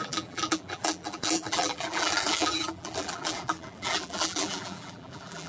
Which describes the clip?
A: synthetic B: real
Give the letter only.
A